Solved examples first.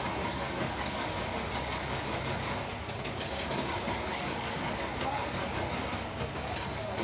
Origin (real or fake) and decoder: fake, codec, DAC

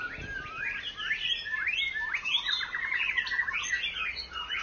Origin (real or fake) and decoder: real